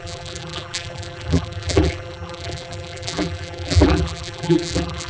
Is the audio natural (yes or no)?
no